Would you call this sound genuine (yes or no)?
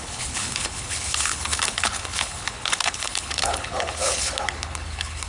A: no